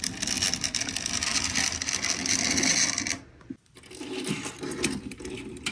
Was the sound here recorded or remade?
recorded